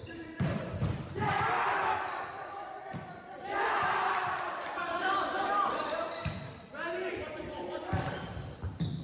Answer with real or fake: fake